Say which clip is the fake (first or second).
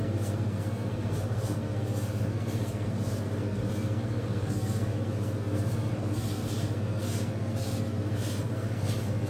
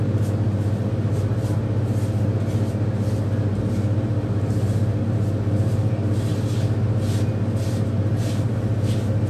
first